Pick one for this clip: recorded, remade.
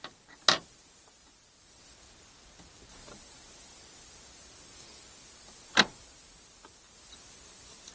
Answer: recorded